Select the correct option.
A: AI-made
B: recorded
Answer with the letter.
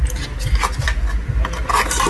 B